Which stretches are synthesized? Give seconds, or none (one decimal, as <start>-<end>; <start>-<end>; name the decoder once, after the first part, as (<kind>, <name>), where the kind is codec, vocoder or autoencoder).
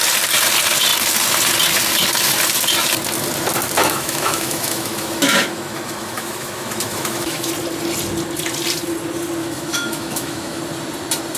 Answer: 3.8-7.5 (autoencoder, DAC-VAE); 9.4-10.6